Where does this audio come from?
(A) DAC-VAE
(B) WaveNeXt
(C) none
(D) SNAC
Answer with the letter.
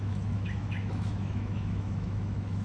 A